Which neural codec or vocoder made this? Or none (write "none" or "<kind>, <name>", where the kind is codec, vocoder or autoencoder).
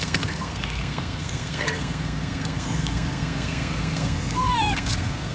codec, SNAC